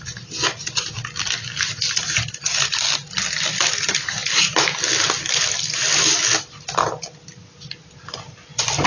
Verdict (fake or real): real